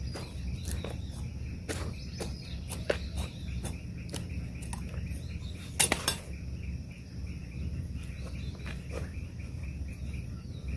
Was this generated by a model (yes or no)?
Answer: no